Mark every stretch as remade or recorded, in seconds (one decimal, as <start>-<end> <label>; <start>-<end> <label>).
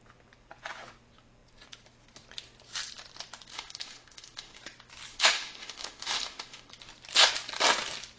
0.0-3.5 recorded; 3.5-4.6 remade; 4.6-5.1 recorded; 5.1-6.7 remade; 6.7-8.2 recorded